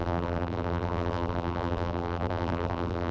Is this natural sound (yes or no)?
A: no